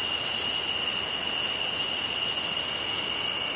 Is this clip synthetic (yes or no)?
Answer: no